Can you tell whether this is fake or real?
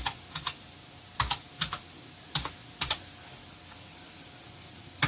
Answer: real